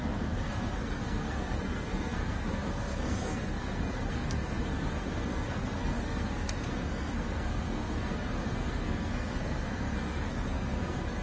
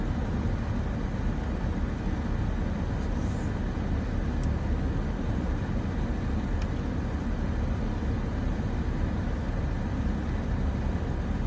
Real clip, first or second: second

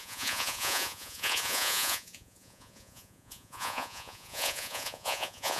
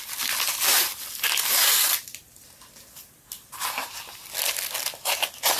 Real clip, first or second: second